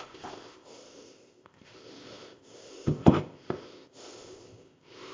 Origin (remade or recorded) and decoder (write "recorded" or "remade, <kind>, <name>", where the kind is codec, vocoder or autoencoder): remade, codec, ZipCodec